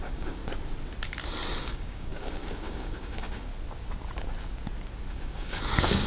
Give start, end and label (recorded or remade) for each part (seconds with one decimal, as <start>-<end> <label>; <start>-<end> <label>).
0.0-0.4 remade; 0.4-1.6 recorded; 1.6-3.5 remade; 3.5-5.1 recorded; 5.1-6.1 remade